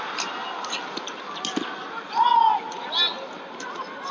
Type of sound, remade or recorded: recorded